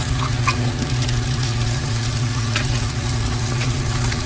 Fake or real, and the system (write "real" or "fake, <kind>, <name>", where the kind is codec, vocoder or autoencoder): fake, vocoder, Vocos